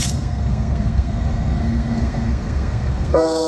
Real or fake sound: fake